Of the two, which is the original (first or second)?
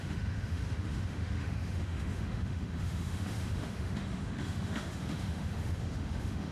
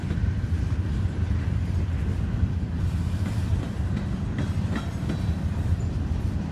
second